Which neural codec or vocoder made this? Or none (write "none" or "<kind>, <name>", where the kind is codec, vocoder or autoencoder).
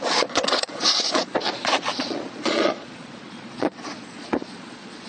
vocoder, Vocos